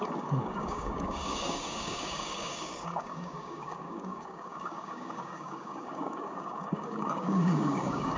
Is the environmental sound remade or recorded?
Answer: remade